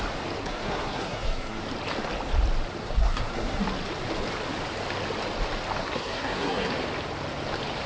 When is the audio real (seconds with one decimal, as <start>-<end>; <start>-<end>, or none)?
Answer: 0.0-0.4; 1.6-2.8; 3.6-5.8; 6.7-7.9